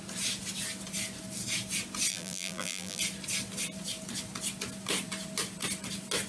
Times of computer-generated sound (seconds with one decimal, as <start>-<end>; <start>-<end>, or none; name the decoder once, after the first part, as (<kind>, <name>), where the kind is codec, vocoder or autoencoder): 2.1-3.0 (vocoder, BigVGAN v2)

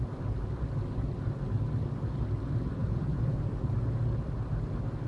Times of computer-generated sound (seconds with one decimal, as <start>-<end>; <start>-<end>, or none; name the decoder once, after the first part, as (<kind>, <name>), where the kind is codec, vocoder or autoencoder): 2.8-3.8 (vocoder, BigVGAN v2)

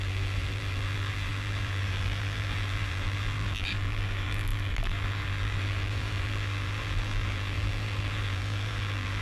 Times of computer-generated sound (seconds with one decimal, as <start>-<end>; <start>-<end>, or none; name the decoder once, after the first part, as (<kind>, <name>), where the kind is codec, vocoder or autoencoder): 0.0-9.2 (vocoder, BigVGAN v2)

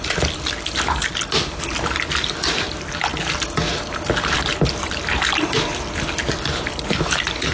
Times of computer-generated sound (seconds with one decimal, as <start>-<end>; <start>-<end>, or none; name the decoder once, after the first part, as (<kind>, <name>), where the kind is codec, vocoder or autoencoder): none